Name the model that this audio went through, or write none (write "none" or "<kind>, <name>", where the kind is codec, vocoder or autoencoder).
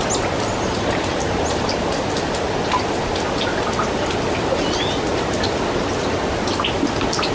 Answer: none